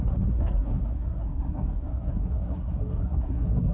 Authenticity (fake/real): fake